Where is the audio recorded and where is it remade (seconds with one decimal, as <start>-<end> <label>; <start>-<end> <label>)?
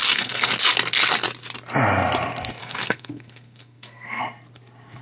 0.0-0.5 remade; 0.5-2.6 recorded; 2.6-4.2 remade; 4.2-5.0 recorded